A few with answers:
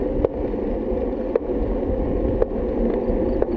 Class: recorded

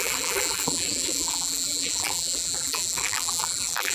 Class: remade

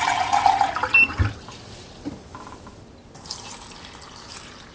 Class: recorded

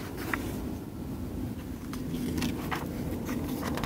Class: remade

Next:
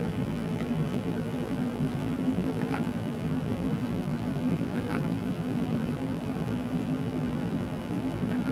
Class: remade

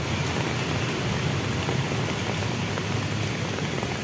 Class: recorded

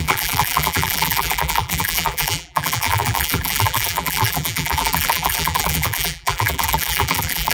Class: remade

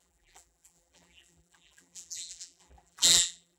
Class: remade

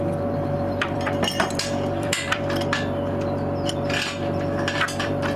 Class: remade